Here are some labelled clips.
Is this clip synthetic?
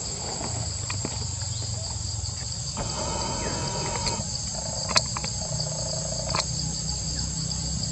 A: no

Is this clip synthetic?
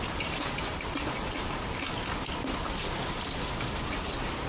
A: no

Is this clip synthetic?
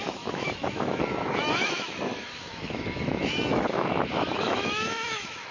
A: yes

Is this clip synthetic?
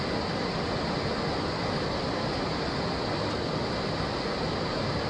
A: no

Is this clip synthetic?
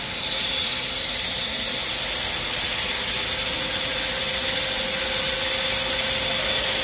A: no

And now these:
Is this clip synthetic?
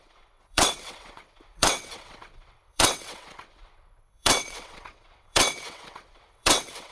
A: yes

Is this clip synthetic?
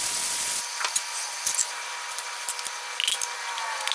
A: no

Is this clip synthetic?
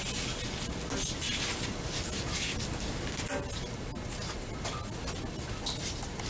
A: no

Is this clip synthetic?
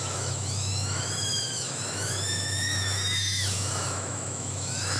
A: yes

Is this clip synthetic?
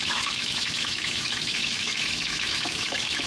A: yes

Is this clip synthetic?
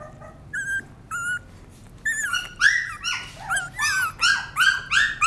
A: no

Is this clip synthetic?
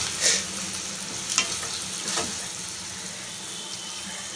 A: no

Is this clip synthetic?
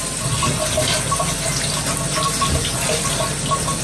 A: no